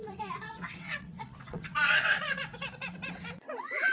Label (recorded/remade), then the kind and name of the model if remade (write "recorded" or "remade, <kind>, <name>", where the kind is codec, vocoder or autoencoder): remade, vocoder, WaveNeXt